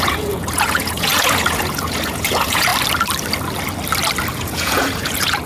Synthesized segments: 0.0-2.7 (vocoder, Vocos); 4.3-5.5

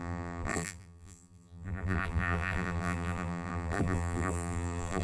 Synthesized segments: 0.0-5.0 (vocoder, BigVGAN v2)

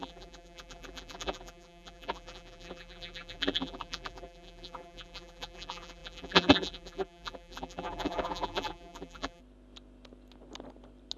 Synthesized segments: 0.0-9.4 (vocoder, BigVGAN v2)

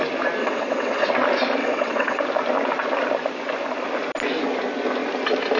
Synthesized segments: 0.4-1.1 (vocoder, WaveNeXt); 1.6-2.2

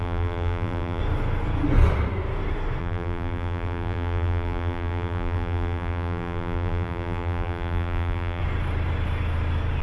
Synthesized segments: 0.0-1.0 (vocoder, BigVGAN v2); 2.8-8.4

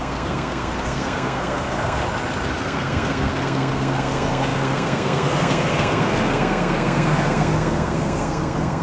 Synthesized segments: 0.0-2.0 (codec, SNAC); 2.6-8.8